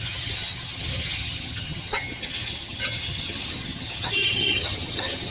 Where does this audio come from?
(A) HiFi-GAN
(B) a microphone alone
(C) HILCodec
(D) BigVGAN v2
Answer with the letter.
A